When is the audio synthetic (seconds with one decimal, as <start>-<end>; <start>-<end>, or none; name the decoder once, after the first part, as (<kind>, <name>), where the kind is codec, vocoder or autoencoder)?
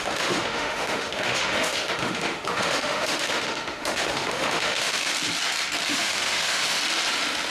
0.0-5.1 (autoencoder, DAC-VAE); 5.9-6.8